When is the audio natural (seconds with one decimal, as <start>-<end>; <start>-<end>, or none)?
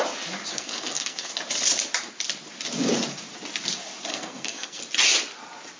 0.0-0.5; 1.3-4.1; 4.8-5.8